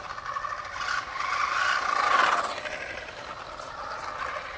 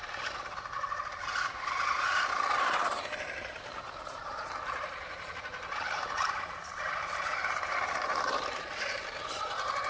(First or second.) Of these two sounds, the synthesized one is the second